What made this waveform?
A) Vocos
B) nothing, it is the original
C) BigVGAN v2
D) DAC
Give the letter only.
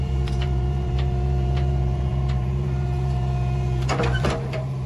C